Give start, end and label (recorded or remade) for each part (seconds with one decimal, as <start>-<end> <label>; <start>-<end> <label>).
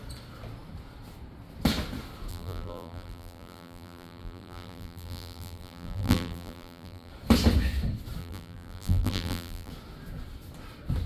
0.0-2.3 recorded; 2.3-7.1 remade; 7.1-8.2 recorded; 8.2-9.7 remade; 9.7-11.1 recorded